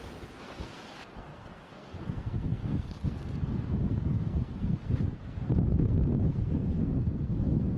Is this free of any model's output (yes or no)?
no